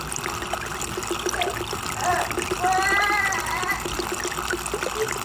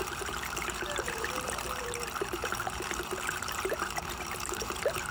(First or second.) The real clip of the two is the first